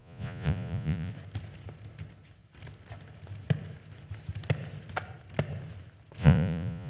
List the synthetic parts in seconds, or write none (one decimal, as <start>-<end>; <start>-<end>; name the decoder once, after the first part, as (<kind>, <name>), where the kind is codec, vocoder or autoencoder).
0.0-1.1 (vocoder, Vocos); 6.2-6.9